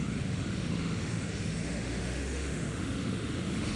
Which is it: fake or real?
fake